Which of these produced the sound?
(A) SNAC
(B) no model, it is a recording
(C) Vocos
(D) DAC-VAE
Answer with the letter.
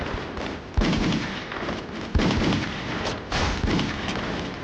B